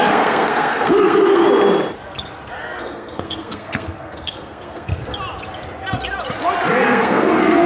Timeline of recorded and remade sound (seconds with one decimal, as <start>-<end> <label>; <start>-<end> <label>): 0.0-1.4 remade; 1.4-2.8 recorded; 2.8-5.0 remade; 5.0-6.7 recorded; 6.7-7.7 remade